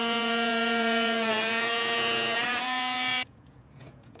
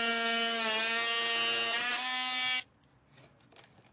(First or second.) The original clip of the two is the second